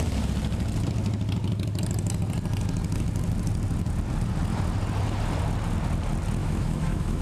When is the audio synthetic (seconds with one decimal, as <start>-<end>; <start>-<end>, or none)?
6.4-7.2